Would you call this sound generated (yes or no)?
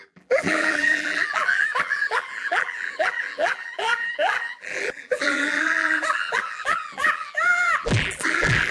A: yes